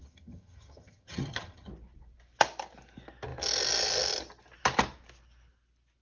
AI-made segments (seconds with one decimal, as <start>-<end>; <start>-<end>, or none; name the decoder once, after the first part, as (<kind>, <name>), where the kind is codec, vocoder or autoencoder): 0.0-1.7 (vocoder, HiFi-GAN)